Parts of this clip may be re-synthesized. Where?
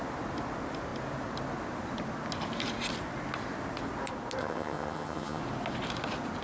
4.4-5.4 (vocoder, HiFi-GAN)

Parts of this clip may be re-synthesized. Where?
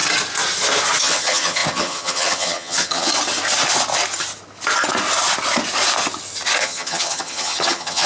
1.0-3.1 (vocoder, HiFi-GAN); 6.6-8.1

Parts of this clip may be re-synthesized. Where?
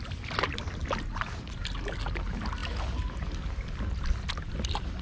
none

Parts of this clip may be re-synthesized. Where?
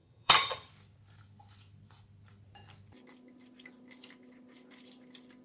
0.0-0.7 (vocoder, HiFi-GAN)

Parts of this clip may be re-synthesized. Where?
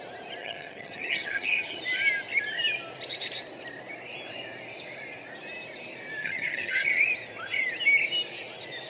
0.4-1.8 (vocoder, HiFi-GAN); 6.2-6.9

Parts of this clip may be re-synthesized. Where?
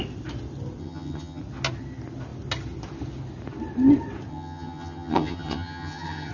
0.8-1.4 (vocoder, HiFi-GAN); 4.3-6.3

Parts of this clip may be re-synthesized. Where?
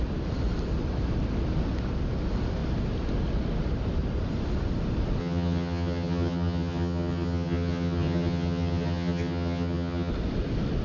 5.2-10.1 (vocoder, HiFi-GAN)